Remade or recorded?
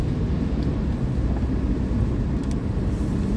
recorded